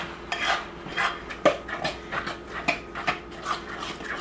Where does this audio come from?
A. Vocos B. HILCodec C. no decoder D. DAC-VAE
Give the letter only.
C